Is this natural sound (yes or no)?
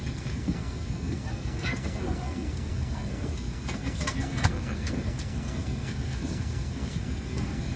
no